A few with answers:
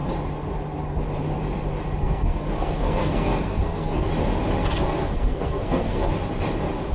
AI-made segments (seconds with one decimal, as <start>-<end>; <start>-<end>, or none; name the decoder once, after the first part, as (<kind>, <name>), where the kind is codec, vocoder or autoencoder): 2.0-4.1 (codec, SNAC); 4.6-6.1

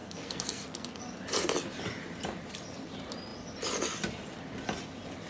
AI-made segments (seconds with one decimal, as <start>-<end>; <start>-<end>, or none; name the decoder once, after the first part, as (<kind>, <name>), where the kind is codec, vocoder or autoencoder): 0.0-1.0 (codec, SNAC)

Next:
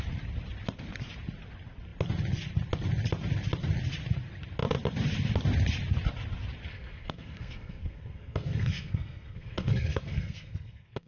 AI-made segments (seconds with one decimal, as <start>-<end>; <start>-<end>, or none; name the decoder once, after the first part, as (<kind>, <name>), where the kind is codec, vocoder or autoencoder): 6.7-11.1 (codec, SNAC)